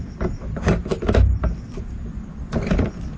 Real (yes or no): no